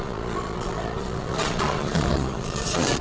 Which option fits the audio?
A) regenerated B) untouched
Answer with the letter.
A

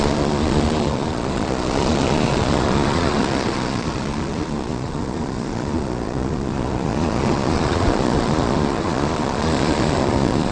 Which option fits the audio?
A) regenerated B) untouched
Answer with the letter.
A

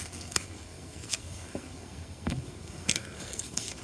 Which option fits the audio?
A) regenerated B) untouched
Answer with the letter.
A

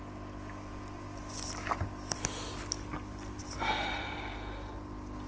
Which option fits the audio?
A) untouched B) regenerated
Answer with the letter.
A